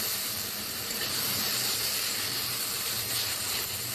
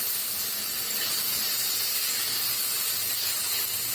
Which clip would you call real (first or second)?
second